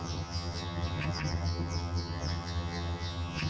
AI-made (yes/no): yes